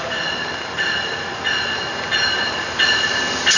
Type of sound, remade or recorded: recorded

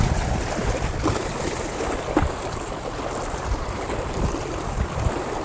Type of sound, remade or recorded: remade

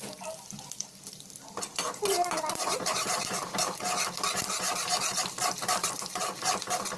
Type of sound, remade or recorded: remade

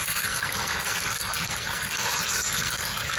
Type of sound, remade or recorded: remade